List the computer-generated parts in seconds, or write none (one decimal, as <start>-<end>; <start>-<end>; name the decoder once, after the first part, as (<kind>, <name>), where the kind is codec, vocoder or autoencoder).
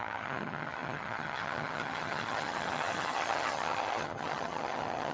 0.0-5.1 (vocoder, HiFi-GAN)